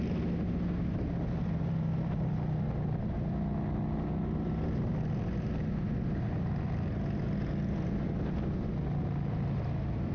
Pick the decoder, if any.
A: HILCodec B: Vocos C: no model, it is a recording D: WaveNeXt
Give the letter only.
C